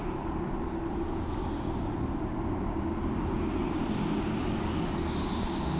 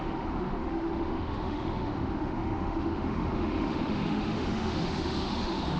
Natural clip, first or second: first